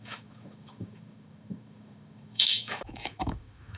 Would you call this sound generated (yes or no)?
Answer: yes